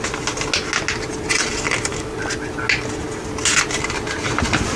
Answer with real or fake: real